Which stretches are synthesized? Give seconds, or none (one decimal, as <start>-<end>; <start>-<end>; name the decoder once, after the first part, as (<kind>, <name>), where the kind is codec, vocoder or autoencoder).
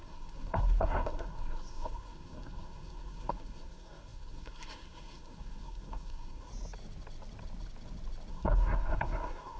0.0-6.5 (codec, SNAC); 8.3-9.6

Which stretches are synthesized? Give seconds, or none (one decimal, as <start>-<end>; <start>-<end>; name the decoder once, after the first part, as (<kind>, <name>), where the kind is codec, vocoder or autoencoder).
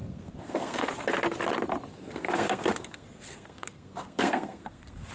0.0-0.9 (codec, SNAC); 1.9-5.1